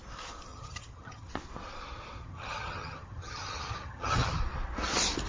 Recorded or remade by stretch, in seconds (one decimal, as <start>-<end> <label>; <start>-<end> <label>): 0.0-0.5 recorded; 0.5-1.3 remade; 1.3-2.2 recorded; 2.2-4.4 remade; 4.4-5.3 recorded